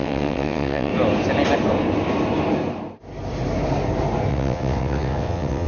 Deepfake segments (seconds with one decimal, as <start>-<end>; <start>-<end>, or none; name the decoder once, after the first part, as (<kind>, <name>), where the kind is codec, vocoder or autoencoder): 0.0-0.9 (vocoder, WaveNeXt); 4.3-5.7